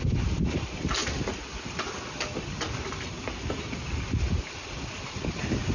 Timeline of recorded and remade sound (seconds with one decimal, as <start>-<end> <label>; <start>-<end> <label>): 0.0-5.7 recorded

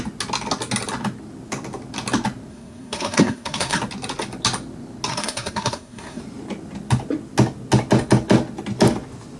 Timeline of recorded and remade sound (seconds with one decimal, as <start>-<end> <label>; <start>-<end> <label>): 0.0-2.5 recorded; 2.5-3.8 remade; 3.8-5.1 recorded; 5.1-6.2 remade; 6.2-9.4 recorded

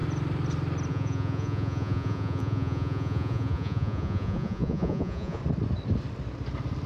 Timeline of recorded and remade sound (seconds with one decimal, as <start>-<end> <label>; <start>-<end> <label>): 0.0-0.9 recorded; 0.9-5.4 remade; 5.4-6.9 recorded

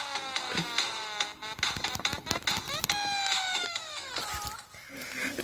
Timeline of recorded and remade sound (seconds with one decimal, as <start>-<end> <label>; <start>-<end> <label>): 0.0-3.5 recorded; 3.5-4.1 remade; 4.1-5.4 recorded

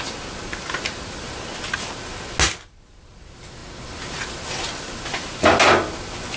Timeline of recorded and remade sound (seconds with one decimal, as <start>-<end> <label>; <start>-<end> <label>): 0.0-6.4 recorded